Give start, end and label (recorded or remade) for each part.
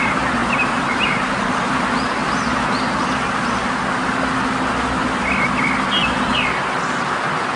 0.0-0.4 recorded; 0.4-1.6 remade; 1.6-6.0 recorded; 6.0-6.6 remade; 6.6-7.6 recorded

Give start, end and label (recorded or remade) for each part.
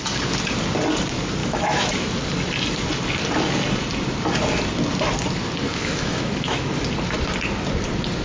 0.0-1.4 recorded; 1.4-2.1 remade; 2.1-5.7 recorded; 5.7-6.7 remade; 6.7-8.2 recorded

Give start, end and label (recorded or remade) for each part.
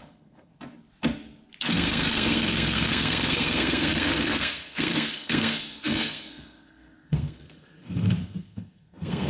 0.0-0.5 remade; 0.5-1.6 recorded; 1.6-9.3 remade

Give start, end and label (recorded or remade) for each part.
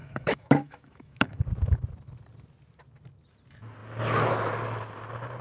0.0-1.4 remade; 1.4-5.4 recorded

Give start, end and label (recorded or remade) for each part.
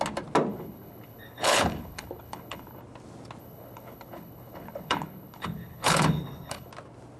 0.0-0.5 recorded; 0.5-2.8 remade; 2.8-3.4 recorded; 3.4-6.7 remade; 6.7-7.2 recorded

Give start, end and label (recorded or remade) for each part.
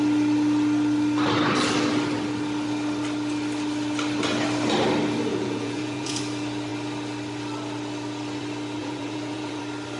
0.0-5.3 recorded; 5.3-6.2 remade; 6.2-8.8 recorded; 8.8-9.6 remade; 9.6-10.0 recorded